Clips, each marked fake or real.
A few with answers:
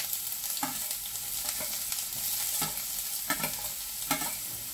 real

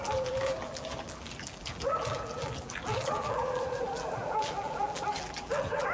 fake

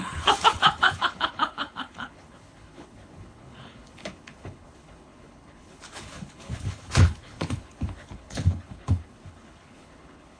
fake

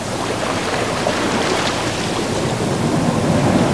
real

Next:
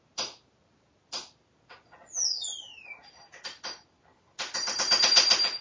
real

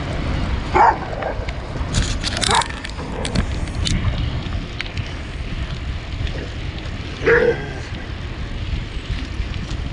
real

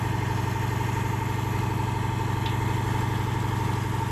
real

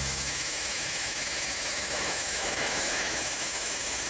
fake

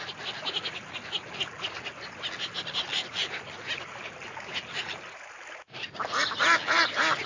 real